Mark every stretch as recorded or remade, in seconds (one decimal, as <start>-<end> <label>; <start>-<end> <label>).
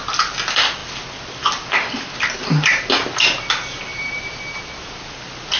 0.0-5.6 recorded